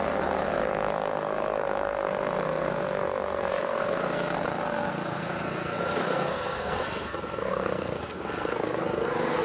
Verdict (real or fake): fake